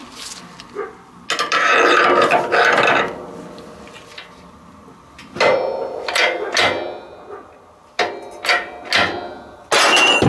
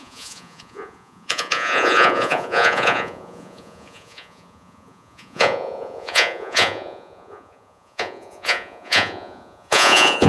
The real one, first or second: first